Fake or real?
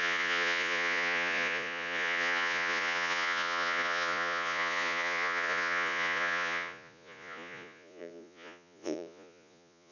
fake